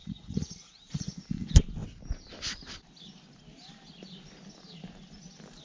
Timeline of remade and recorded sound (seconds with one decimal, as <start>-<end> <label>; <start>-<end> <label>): 0.0-1.2 remade; 1.2-5.6 recorded